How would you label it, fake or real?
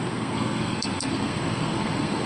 fake